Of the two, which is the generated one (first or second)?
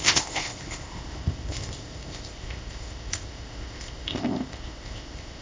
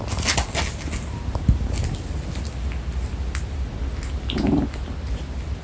first